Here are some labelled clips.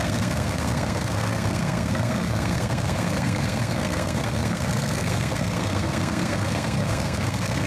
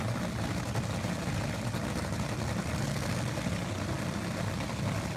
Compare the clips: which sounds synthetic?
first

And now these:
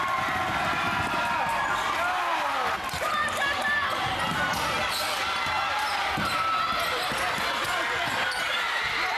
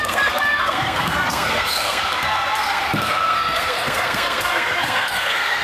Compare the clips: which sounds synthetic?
second